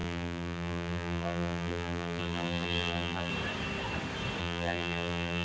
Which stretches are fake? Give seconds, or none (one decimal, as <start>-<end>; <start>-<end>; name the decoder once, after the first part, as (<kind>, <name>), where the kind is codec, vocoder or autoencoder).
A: 0.0-3.3 (vocoder, BigVGAN v2); 4.4-5.4